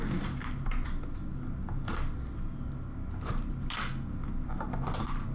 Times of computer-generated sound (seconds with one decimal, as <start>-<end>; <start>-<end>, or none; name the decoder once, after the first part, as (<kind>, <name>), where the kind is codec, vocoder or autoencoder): none